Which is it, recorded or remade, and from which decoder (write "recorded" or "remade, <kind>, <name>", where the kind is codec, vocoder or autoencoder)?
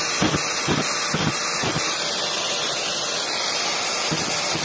recorded